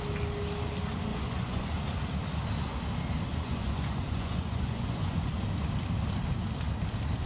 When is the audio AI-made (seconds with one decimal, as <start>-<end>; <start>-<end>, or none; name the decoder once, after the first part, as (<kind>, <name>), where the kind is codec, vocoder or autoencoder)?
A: 1.1-1.7 (vocoder, Vocos); 3.3-5.3